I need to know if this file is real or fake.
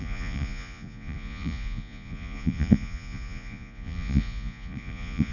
fake